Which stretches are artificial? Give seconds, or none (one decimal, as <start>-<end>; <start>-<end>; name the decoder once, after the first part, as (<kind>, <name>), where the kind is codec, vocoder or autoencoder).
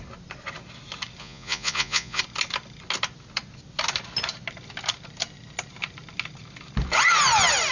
1.2-2.2 (vocoder, Vocos)